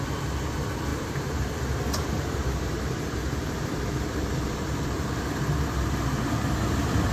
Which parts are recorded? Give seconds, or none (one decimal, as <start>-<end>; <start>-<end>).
0.0-0.9; 5.2-7.1